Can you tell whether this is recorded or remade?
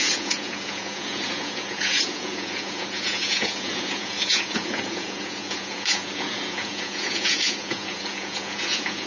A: remade